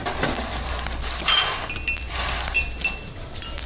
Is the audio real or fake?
real